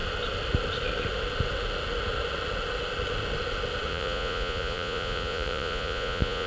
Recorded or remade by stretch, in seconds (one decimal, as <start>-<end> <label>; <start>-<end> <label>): 0.0-3.9 recorded; 3.9-6.5 remade